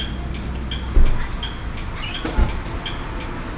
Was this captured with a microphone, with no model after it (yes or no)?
yes